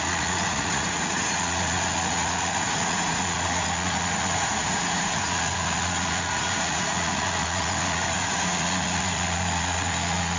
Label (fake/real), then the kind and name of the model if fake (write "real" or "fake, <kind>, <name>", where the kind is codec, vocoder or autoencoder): fake, vocoder, Vocos